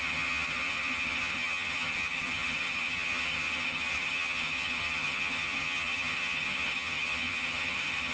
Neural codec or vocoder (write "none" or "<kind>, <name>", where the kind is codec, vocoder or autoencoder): vocoder, HiFi-GAN